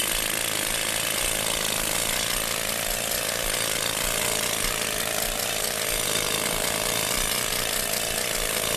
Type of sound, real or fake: real